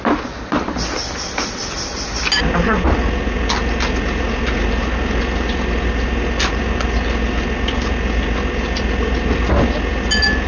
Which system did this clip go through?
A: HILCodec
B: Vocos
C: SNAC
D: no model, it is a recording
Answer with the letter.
D